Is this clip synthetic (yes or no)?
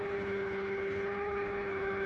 yes